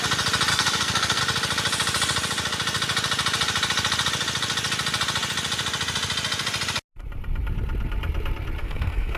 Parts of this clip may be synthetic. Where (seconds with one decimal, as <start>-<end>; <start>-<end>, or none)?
0.5-1.2; 8.6-9.2